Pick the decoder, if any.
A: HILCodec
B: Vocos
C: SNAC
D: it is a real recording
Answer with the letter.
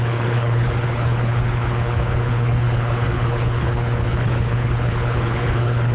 A